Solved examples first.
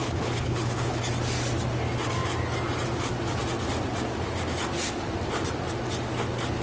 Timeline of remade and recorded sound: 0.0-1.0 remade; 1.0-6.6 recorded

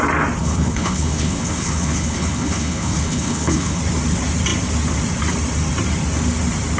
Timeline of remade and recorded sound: 0.0-0.4 recorded; 0.4-3.8 remade; 3.8-6.8 recorded

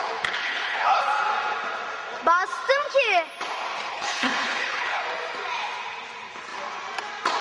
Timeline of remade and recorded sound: 0.0-0.4 recorded; 0.4-1.0 remade; 1.0-3.9 recorded; 3.9-5.0 remade; 5.0-7.4 recorded

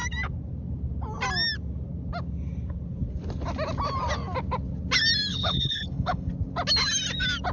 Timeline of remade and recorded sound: 0.0-5.3 recorded; 5.3-6.3 remade; 6.3-7.5 recorded

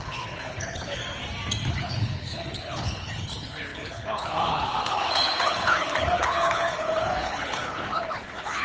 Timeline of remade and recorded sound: 0.0-1.0 remade; 1.0-1.7 recorded; 1.7-8.6 remade

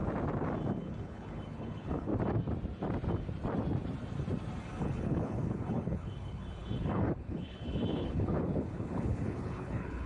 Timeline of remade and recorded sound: 0.0-0.8 recorded; 0.8-2.1 remade; 2.1-4.8 recorded; 4.8-10.1 remade

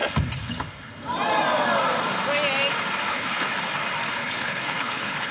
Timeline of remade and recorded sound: 0.0-3.1 recorded; 3.1-3.5 remade; 3.5-4.1 recorded; 4.1-5.3 remade

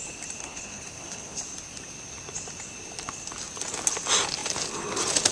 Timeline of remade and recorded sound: 0.0-0.4 recorded; 0.4-1.4 remade; 1.4-5.3 recorded